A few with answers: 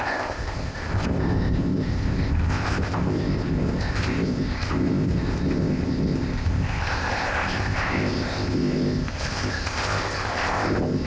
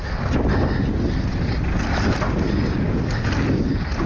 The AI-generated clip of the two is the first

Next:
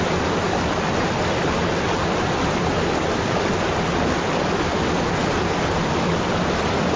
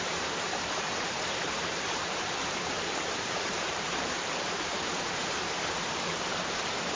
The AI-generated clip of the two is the second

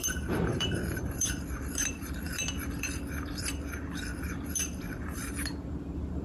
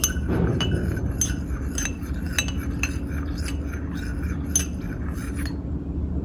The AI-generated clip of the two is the first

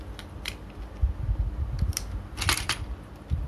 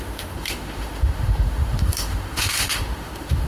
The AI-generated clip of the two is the second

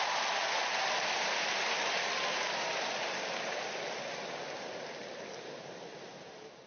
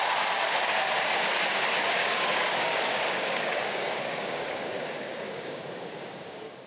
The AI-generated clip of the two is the second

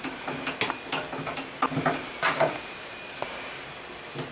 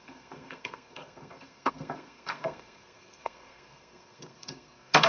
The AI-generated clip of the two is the second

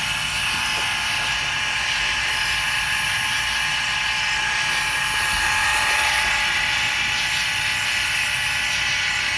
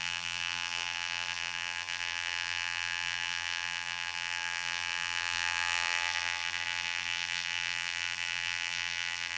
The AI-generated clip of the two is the second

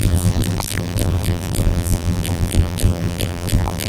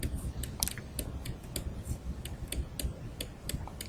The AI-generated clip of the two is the first